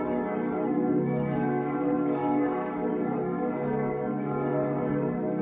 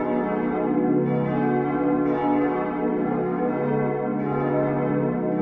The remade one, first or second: first